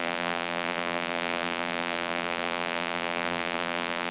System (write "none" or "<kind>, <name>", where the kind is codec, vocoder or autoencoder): vocoder, BigVGAN v2